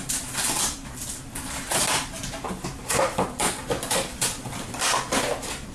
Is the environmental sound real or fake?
real